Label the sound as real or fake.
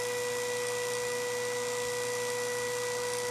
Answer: real